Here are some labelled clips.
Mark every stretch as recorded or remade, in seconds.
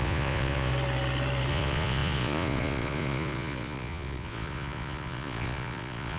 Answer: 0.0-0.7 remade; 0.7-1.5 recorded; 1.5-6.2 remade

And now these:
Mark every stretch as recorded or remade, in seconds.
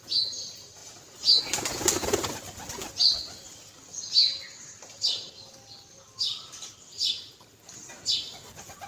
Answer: 0.0-4.2 recorded; 4.2-4.8 remade; 4.8-8.9 recorded